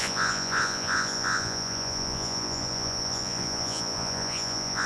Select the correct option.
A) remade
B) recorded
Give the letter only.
A